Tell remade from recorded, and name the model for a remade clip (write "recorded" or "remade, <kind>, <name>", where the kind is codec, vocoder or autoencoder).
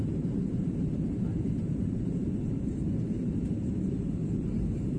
remade, vocoder, BigVGAN v2